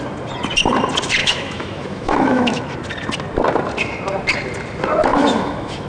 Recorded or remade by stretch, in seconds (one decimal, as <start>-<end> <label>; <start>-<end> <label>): 0.0-1.2 recorded; 1.2-2.6 remade; 2.6-5.1 recorded; 5.1-5.9 remade